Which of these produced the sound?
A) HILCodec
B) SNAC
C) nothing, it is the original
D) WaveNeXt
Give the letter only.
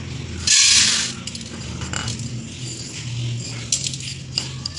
C